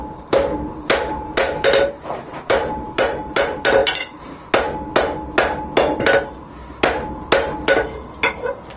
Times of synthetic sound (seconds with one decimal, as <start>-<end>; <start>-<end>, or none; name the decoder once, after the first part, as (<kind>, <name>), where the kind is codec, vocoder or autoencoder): 1.1-3.8 (vocoder, BigVGAN v2); 7.6-8.0